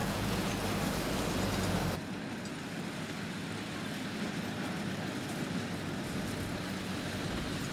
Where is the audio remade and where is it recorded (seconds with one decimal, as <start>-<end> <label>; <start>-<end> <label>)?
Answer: 0.0-0.5 remade; 0.5-7.7 recorded